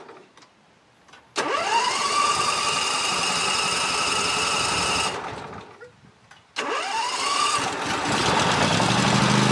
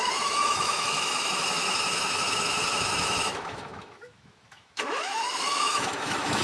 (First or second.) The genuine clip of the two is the first